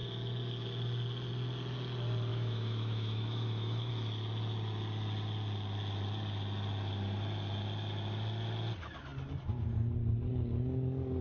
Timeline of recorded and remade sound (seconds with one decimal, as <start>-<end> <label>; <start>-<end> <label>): 0.0-2.3 recorded; 2.3-3.9 remade; 3.9-11.2 recorded